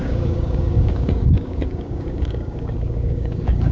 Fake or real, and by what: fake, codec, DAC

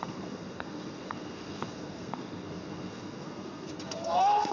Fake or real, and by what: fake, codec, SNAC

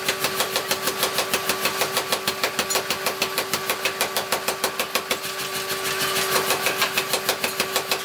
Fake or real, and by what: real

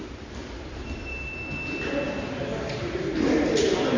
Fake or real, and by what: real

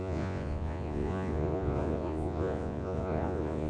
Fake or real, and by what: fake, vocoder, Vocos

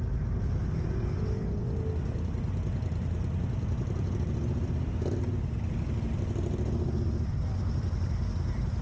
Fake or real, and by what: real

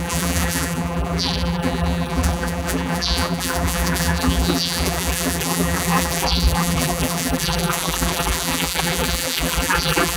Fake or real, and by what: fake, vocoder, BigVGAN v2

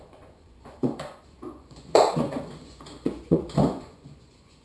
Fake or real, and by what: fake, vocoder, Vocos